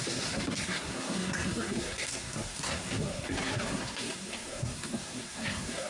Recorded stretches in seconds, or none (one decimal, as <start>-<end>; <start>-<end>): none